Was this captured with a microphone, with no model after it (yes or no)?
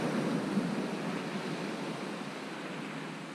yes